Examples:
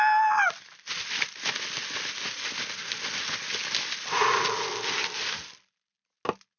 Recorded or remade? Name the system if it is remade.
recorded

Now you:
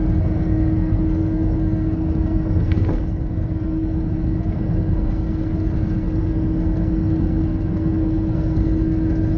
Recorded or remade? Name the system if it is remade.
remade, codec, SNAC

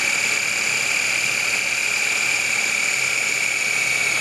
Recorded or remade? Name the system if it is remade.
recorded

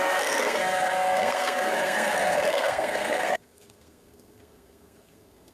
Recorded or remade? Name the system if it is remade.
remade, codec, SNAC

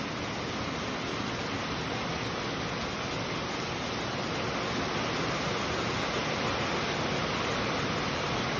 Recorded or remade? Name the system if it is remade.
recorded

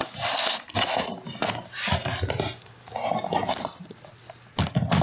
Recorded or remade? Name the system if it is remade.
recorded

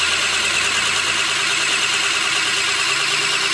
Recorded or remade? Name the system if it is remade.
recorded